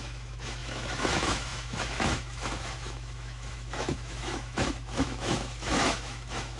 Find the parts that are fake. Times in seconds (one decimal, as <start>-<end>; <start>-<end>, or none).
0.0-6.6